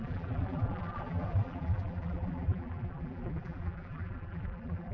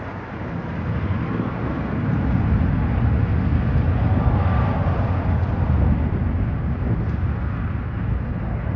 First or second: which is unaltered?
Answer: second